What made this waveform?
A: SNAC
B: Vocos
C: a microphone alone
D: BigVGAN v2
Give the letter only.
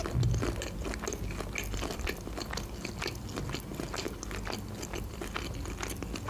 C